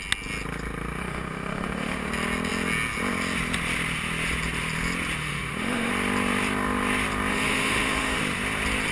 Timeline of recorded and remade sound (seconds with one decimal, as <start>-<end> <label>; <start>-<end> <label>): 0.0-1.0 recorded; 1.0-2.1 remade; 2.1-5.2 recorded; 5.2-5.9 remade; 5.9-7.3 recorded; 7.3-8.2 remade; 8.2-8.9 recorded

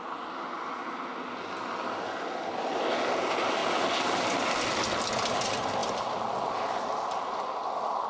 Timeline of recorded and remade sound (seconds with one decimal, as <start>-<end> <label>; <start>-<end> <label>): 0.0-8.1 recorded

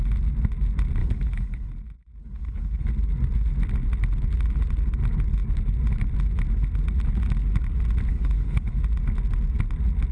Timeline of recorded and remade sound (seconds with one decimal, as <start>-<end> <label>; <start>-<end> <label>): 0.0-1.0 recorded; 1.0-1.7 remade; 1.7-2.2 recorded; 2.2-2.9 remade; 2.9-8.1 recorded; 8.1-8.8 remade; 8.8-10.1 recorded

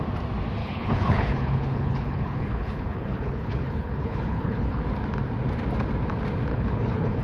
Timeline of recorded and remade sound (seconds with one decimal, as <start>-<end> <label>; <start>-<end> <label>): 0.0-0.6 recorded; 0.6-4.8 remade; 4.8-6.5 recorded; 6.5-7.2 remade

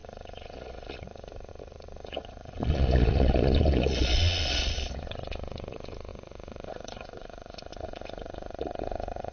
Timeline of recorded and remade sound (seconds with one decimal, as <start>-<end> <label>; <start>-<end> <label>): 0.0-9.3 remade

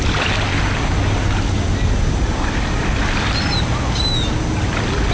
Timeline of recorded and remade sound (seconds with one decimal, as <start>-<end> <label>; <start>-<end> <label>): 0.0-5.1 recorded